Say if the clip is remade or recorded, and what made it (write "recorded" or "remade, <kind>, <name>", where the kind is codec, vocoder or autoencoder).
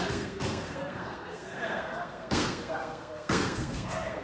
remade, codec, SNAC